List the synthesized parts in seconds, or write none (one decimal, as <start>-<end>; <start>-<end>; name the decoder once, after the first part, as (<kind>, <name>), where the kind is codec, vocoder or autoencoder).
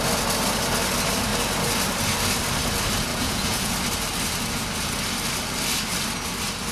3.1-3.7 (vocoder, Vocos)